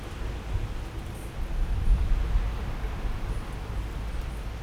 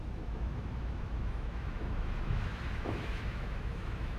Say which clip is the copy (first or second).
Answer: second